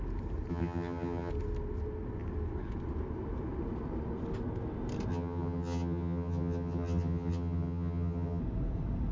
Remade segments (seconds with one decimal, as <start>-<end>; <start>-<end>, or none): 0.5-1.3; 5.1-8.4